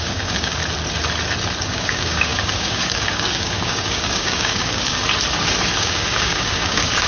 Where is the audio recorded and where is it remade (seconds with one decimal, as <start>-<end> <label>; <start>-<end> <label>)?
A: 0.0-0.6 remade; 0.6-1.6 recorded; 1.6-5.0 remade; 5.0-5.8 recorded; 5.8-7.1 remade